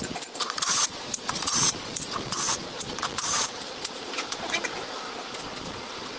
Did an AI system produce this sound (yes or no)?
yes